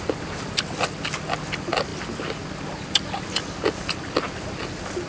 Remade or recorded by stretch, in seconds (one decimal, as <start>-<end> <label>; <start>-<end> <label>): 0.0-5.1 recorded